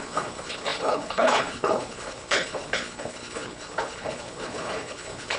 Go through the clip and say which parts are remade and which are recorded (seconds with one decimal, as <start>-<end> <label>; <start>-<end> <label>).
0.0-5.4 remade